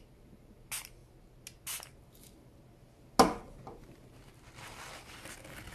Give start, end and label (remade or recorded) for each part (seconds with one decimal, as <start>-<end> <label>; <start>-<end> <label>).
0.0-5.7 recorded